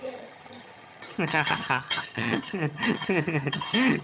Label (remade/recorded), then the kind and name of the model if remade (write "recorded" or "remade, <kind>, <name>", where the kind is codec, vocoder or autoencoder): remade, vocoder, HiFi-GAN